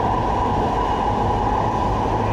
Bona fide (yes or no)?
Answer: yes